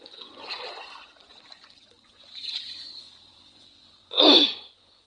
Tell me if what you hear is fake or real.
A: fake